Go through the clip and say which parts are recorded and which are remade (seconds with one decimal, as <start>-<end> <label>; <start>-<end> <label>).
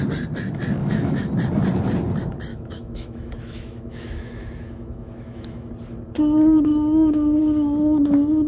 0.0-0.8 recorded; 0.8-1.3 remade; 1.3-2.5 recorded; 2.5-5.7 remade; 5.7-8.5 recorded